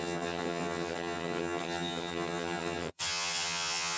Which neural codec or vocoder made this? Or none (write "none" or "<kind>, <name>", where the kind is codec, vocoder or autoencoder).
vocoder, HiFi-GAN